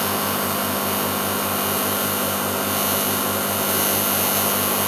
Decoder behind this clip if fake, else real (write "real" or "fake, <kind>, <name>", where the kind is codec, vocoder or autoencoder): real